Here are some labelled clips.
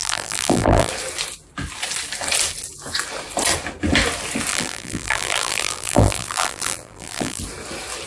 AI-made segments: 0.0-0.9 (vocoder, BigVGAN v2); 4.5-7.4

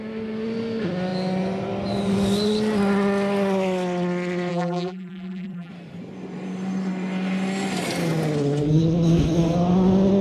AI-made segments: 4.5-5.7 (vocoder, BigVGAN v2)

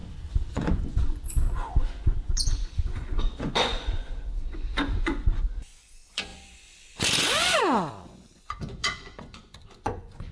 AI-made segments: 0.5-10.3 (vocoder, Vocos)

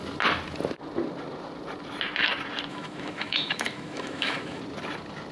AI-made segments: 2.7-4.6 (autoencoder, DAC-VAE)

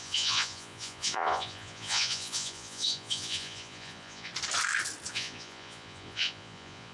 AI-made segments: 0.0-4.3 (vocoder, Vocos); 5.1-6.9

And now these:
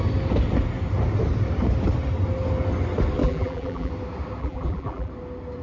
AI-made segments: 3.2-3.9 (vocoder, BigVGAN v2); 4.4-5.1

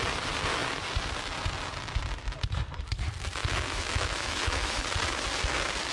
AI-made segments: 3.4-4.8 (autoencoder, DAC-VAE)